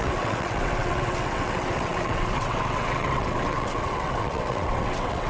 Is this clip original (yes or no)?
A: no